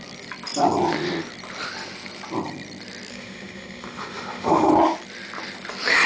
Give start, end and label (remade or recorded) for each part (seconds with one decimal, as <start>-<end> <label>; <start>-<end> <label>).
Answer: 0.0-3.1 recorded; 3.1-4.7 remade; 4.7-6.1 recorded